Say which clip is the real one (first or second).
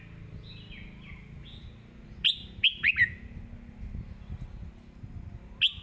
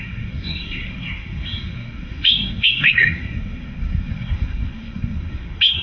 first